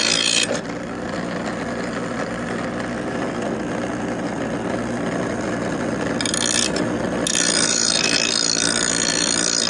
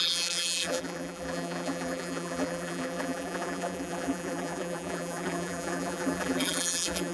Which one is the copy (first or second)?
second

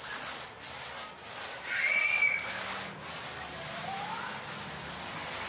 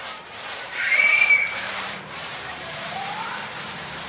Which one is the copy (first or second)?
second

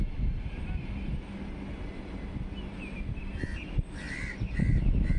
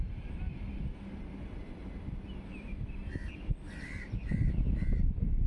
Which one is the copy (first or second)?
second